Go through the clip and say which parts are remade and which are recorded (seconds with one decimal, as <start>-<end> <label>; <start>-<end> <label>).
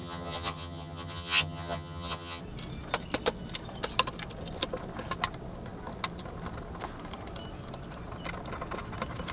0.0-2.4 remade; 2.4-9.3 recorded